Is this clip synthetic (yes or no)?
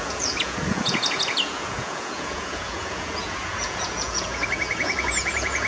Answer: yes